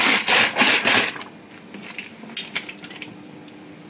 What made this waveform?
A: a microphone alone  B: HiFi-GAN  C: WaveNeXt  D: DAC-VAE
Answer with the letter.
A